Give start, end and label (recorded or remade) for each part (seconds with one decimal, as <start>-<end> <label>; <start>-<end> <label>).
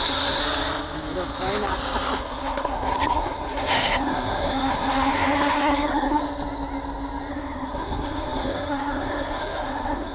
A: 0.0-0.4 remade; 0.4-2.2 recorded; 2.2-6.2 remade; 6.2-7.3 recorded; 7.3-10.1 remade